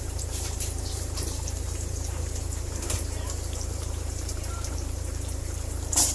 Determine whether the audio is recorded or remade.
remade